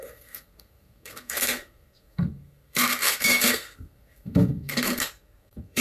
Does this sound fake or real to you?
fake